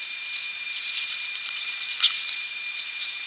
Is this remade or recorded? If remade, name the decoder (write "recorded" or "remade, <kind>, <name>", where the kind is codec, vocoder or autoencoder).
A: remade, vocoder, Vocos